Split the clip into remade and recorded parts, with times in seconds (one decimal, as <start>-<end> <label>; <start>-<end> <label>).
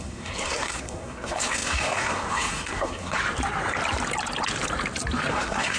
0.0-3.2 remade; 3.2-5.3 recorded; 5.3-5.8 remade